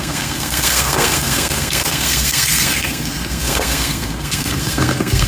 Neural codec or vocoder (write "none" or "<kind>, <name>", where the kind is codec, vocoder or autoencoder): codec, SNAC